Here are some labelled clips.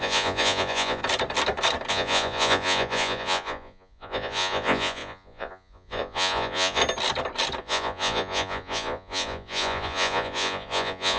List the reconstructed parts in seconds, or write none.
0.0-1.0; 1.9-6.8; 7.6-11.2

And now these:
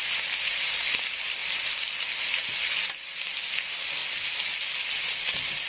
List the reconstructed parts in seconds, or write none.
none

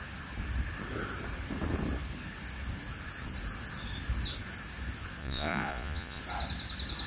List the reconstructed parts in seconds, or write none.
5.2-6.2